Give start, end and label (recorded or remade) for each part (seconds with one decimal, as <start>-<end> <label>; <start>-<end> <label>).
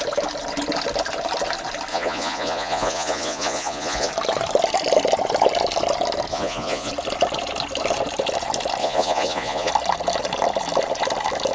0.0-1.9 recorded; 1.9-4.1 remade; 4.1-6.3 recorded; 6.3-6.9 remade; 6.9-8.8 recorded; 8.8-9.7 remade; 9.7-11.5 recorded